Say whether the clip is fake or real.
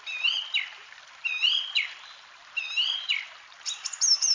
real